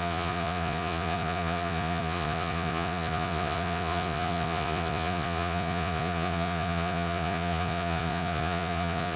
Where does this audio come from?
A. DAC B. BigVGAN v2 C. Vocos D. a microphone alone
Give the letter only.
C